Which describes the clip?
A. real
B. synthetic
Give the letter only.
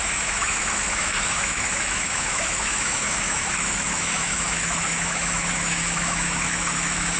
B